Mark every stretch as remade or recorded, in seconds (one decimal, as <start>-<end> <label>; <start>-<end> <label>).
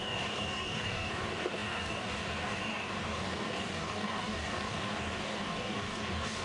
0.0-6.4 remade